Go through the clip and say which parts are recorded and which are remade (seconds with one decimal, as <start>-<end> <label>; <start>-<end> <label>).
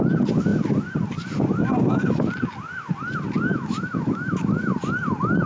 0.0-3.5 recorded; 3.5-4.7 remade; 4.7-5.5 recorded